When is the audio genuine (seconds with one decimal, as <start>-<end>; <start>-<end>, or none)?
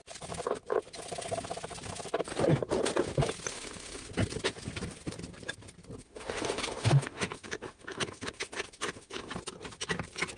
0.0-3.5; 4.1-6.0; 9.3-10.4